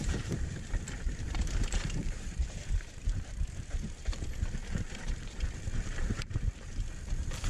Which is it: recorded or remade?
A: remade